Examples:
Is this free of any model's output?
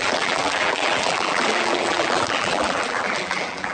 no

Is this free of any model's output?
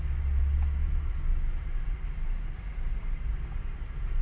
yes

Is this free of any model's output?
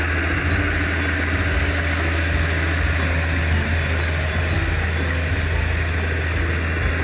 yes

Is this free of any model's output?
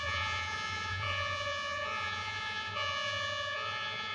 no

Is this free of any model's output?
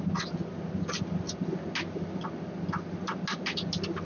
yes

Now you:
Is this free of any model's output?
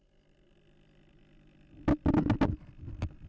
yes